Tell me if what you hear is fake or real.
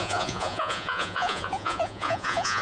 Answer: fake